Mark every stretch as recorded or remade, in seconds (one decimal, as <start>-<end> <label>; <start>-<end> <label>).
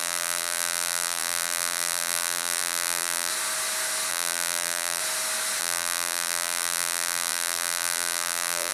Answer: 0.0-3.3 remade; 3.3-4.1 recorded; 4.1-5.0 remade; 5.0-5.6 recorded; 5.6-8.7 remade